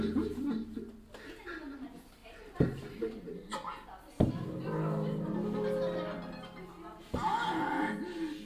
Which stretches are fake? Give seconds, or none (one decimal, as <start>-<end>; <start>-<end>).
2.2-3.0